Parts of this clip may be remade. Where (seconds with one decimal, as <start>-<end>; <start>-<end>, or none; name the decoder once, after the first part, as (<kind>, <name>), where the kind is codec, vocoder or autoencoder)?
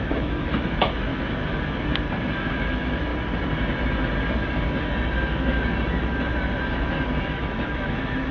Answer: 0.0-1.1 (autoencoder, DAC-VAE); 2.6-3.1; 7.2-8.3